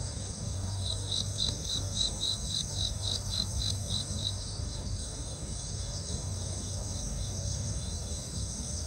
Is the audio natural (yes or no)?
no